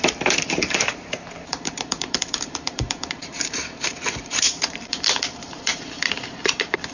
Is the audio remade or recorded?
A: remade